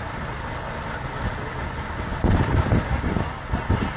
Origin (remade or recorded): recorded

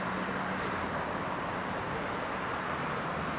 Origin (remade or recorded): recorded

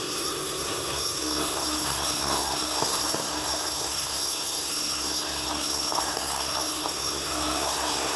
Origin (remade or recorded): remade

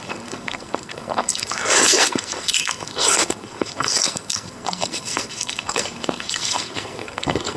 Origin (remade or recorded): remade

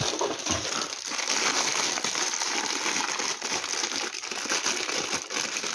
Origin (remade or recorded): recorded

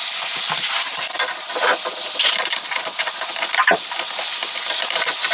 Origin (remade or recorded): recorded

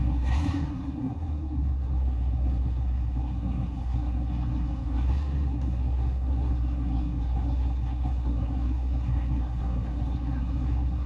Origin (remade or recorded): remade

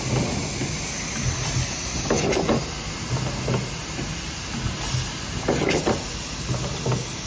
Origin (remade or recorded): recorded